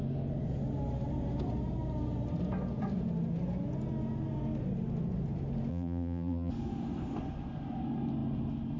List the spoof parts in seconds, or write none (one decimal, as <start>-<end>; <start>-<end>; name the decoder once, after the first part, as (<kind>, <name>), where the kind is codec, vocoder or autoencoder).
5.7-6.5 (vocoder, BigVGAN v2)